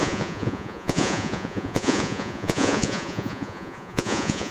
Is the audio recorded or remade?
remade